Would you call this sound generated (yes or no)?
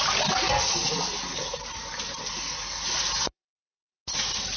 no